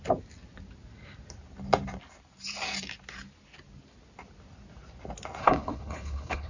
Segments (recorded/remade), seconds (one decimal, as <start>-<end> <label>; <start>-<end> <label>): 0.0-5.4 recorded; 5.4-6.5 remade

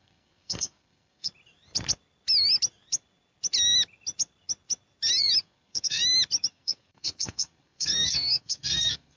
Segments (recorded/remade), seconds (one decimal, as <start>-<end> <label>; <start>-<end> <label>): 0.0-1.3 remade; 1.3-5.4 recorded; 5.4-6.0 remade; 6.0-6.5 recorded; 6.5-9.2 remade

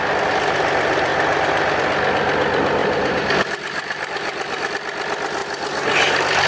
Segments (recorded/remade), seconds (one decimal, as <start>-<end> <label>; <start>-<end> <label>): 0.0-2.8 recorded; 2.8-4.7 remade; 4.7-5.4 recorded; 5.4-6.5 remade

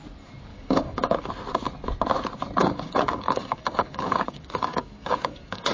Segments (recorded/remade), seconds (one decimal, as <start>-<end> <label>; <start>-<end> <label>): 0.0-0.5 recorded; 0.5-1.3 remade; 1.3-2.6 recorded; 2.6-5.7 remade

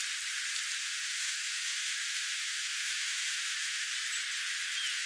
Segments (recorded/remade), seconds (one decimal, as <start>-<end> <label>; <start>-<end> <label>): 0.0-0.8 recorded; 0.8-3.9 remade; 3.9-5.1 recorded

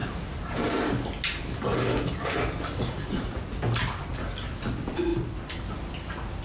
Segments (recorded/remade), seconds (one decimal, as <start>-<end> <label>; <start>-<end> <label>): 0.0-2.8 recorded; 2.8-3.5 remade; 3.5-6.4 recorded